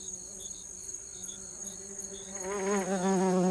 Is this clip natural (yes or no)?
yes